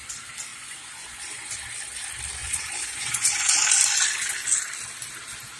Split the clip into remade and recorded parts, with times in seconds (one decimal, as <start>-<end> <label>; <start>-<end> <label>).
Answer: 0.0-0.5 recorded; 0.5-1.5 remade; 1.5-2.4 recorded; 2.4-3.6 remade; 3.6-5.6 recorded